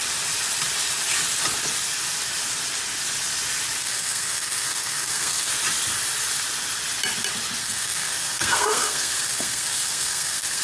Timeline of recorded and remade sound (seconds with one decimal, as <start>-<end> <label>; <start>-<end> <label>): 0.0-3.8 recorded; 3.8-5.5 remade; 5.5-7.6 recorded; 7.6-10.6 remade